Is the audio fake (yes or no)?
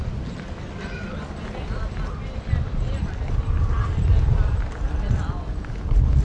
no